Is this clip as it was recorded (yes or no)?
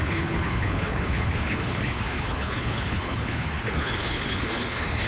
no